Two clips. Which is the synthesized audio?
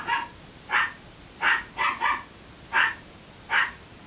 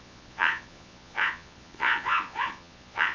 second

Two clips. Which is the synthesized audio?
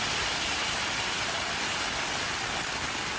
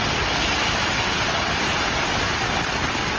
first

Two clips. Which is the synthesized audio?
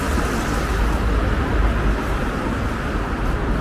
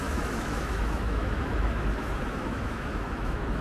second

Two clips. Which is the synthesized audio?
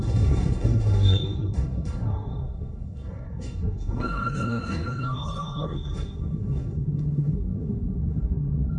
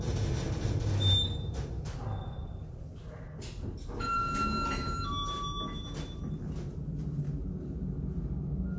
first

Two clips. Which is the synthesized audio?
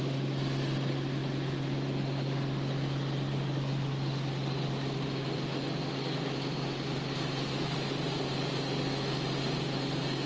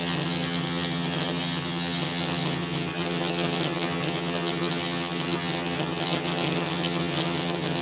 second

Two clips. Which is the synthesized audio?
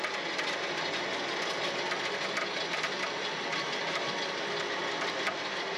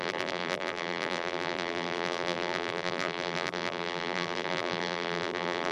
second